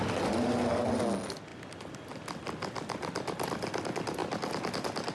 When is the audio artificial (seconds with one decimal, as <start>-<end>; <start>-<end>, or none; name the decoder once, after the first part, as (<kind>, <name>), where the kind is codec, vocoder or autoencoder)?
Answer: none

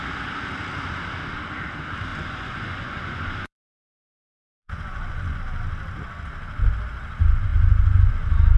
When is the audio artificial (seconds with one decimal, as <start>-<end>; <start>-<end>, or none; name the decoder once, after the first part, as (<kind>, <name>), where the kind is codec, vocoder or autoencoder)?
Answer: 2.1-5.4 (vocoder, Vocos); 7.5-8.1